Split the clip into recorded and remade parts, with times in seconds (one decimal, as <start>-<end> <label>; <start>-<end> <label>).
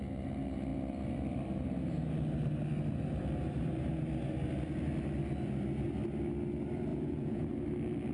0.0-6.9 recorded; 6.9-7.5 remade; 7.5-8.1 recorded